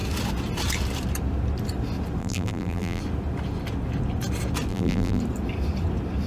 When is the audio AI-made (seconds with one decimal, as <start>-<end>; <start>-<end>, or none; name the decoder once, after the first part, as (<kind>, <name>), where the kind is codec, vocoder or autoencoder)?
2.2-3.0 (vocoder, BigVGAN v2); 4.7-5.2